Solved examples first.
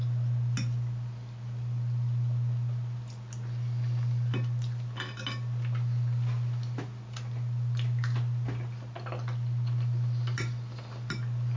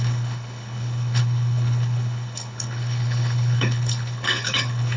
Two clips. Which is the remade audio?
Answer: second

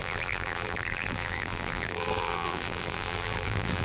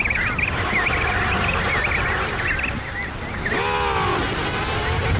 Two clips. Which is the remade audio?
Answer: first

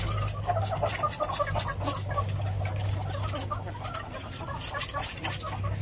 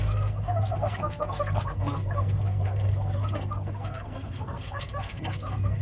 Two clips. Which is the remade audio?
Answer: second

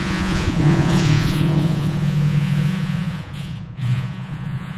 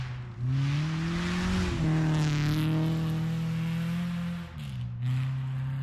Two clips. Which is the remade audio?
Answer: first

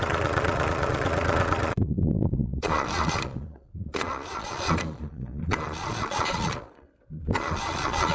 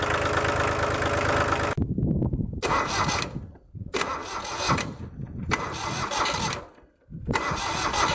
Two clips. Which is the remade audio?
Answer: first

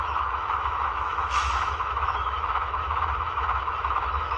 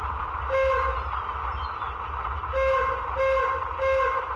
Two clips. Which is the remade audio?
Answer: first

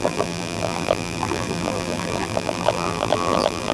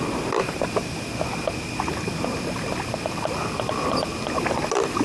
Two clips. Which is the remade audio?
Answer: first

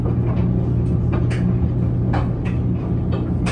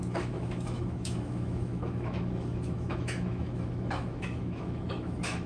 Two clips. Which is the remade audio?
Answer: second